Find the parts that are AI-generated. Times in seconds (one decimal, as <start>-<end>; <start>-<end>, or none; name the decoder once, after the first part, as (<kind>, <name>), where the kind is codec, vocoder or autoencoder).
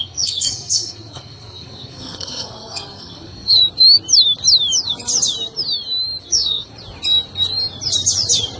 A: 0.0-3.6 (codec, SNAC); 6.2-6.7